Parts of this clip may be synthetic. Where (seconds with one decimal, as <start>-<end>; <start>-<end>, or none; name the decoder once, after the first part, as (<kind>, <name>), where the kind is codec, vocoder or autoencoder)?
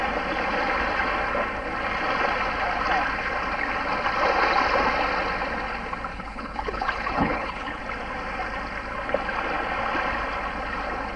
6.1-7.8 (codec, HILCodec)